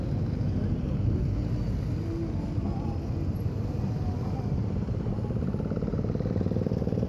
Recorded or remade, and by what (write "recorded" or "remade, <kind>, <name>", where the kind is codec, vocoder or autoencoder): recorded